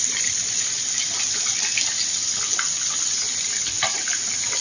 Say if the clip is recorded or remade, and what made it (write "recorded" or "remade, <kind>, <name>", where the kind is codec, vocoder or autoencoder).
recorded